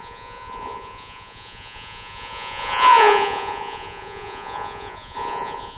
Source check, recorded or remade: remade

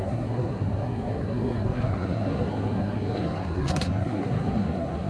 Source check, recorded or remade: remade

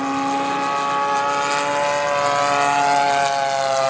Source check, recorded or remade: recorded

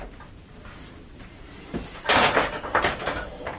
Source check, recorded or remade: remade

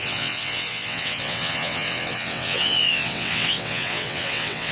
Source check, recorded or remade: remade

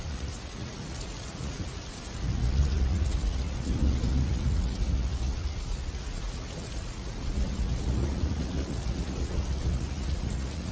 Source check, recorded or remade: remade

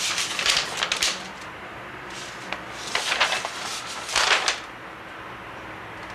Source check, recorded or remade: remade